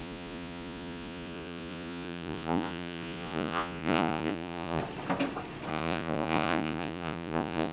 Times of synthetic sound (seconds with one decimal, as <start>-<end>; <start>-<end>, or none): 0.0-4.8; 5.7-7.7